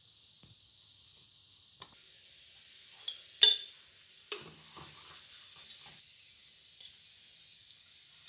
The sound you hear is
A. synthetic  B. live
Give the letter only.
B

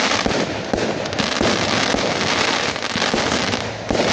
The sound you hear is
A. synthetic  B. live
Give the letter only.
B